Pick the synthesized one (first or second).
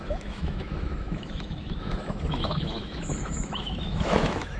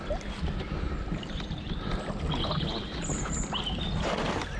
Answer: first